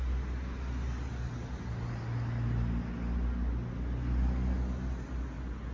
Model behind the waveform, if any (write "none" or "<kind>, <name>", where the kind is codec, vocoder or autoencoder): none